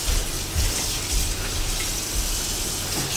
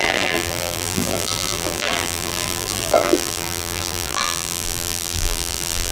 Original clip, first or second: first